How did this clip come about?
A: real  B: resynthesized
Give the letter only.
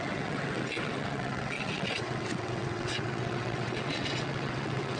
B